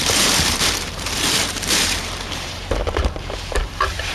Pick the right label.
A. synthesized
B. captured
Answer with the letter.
A